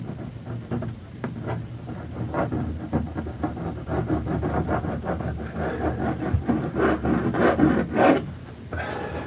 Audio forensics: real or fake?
real